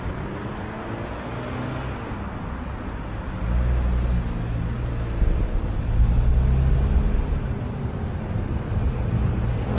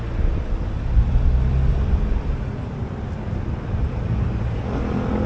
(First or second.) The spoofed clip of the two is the second